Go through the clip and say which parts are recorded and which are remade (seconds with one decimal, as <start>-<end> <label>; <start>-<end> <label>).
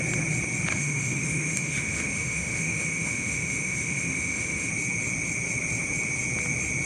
0.0-0.7 recorded; 0.7-4.7 remade; 4.7-6.9 recorded